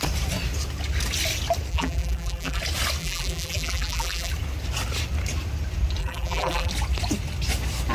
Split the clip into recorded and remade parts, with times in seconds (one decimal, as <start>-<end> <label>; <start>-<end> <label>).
0.0-1.7 recorded; 1.7-2.6 remade; 2.6-3.0 recorded; 3.0-4.3 remade; 4.3-6.0 recorded; 6.0-6.7 remade; 6.7-7.9 recorded